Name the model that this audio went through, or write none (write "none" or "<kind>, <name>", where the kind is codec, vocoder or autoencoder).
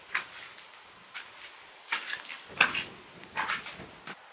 none